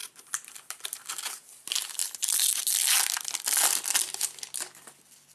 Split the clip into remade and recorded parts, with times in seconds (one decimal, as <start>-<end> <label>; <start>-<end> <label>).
0.0-1.1 remade; 1.1-5.3 recorded